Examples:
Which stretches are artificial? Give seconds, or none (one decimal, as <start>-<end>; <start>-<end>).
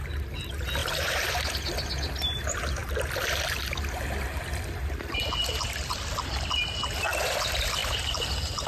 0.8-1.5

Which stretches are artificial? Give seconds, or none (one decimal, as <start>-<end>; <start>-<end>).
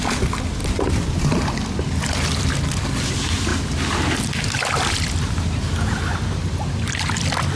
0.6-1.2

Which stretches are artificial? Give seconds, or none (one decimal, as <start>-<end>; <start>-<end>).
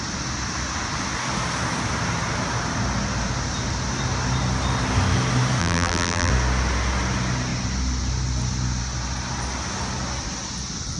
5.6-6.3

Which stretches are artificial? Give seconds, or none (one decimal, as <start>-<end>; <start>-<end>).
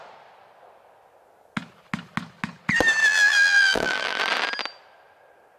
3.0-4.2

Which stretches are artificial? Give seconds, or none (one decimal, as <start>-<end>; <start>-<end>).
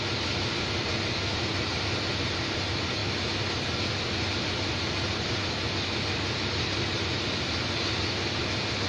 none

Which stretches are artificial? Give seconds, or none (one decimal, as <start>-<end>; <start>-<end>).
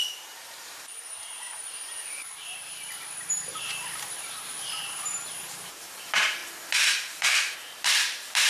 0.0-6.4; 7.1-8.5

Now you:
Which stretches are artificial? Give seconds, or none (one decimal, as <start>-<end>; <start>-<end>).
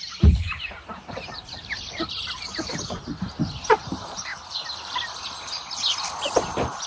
0.0-4.3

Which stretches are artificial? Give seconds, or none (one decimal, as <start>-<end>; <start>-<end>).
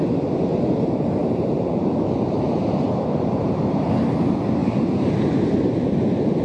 1.2-3.7; 4.6-6.4